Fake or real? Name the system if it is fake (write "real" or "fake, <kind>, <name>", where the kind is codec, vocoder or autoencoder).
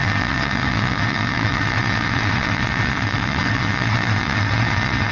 fake, vocoder, WaveNeXt